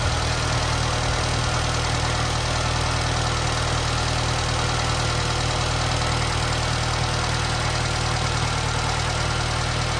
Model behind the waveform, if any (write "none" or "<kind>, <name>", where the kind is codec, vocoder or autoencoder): none